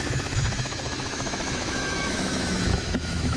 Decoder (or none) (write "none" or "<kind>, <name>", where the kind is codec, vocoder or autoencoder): autoencoder, DAC-VAE